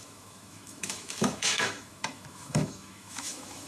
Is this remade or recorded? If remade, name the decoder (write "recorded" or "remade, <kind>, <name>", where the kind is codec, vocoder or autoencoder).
remade, autoencoder, DAC-VAE